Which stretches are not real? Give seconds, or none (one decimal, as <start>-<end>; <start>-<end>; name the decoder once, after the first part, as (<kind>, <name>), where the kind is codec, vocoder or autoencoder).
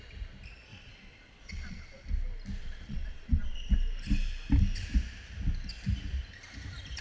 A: 0.7-2.1 (vocoder, Vocos); 2.6-3.7